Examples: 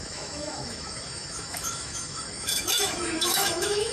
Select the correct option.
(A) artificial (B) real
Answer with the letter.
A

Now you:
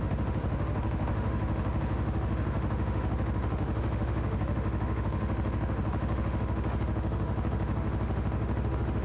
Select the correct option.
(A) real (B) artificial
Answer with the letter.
B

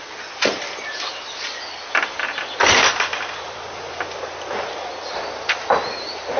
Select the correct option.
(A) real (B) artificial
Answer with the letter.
A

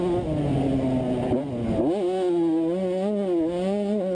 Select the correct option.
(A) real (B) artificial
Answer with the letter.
A